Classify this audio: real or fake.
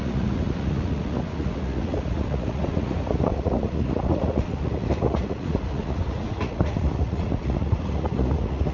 fake